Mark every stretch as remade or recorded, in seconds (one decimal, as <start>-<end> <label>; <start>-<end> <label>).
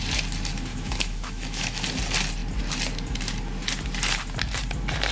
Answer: 0.0-0.7 recorded; 0.7-1.8 remade; 1.8-5.1 recorded